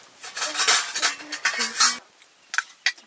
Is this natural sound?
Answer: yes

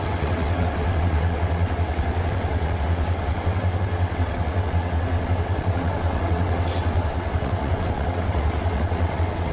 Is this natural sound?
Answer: no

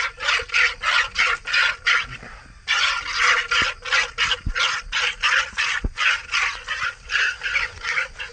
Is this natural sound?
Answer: yes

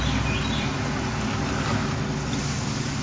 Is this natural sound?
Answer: yes